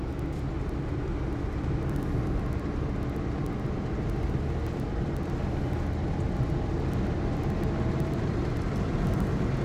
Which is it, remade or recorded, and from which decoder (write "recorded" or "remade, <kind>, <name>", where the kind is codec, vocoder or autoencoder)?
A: recorded